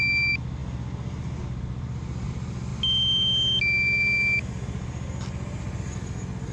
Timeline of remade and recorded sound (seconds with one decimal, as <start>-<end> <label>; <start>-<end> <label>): 0.0-6.5 recorded